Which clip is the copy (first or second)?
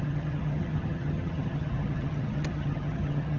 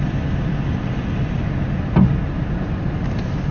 first